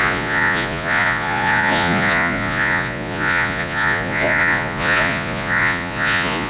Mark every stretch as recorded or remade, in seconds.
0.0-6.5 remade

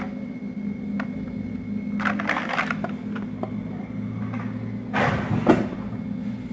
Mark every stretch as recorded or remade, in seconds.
0.0-2.5 recorded; 2.5-3.8 remade; 3.8-6.5 recorded

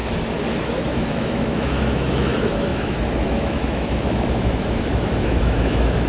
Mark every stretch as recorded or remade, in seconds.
0.0-1.1 recorded; 1.1-6.1 remade

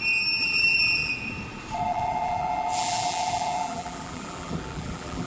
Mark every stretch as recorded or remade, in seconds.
0.0-0.4 recorded; 0.4-1.1 remade; 1.1-1.9 recorded; 1.9-5.3 remade

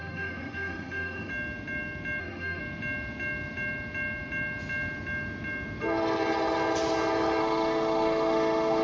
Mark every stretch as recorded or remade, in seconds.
0.0-1.3 remade; 1.3-2.2 recorded; 2.2-2.6 remade; 2.6-7.4 recorded; 7.4-8.8 remade

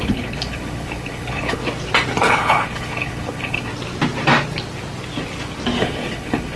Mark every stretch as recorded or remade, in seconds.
0.0-1.6 remade; 1.6-2.3 recorded; 2.3-3.7 remade; 3.7-5.8 recorded; 5.8-6.6 remade

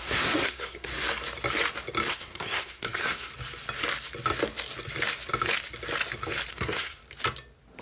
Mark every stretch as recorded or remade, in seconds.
0.0-0.9 remade; 0.9-2.1 recorded; 2.1-3.3 remade; 3.3-6.5 recorded; 6.5-7.0 remade; 7.0-7.8 recorded